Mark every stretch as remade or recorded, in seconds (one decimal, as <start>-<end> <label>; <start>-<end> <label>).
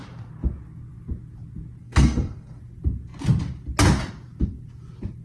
0.0-1.8 recorded; 1.8-2.6 remade; 2.6-5.2 recorded